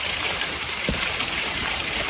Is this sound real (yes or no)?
no